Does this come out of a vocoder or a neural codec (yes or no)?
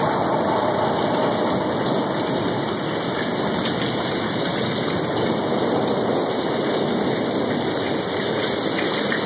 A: no